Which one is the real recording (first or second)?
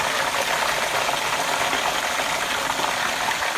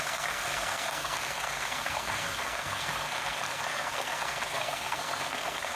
first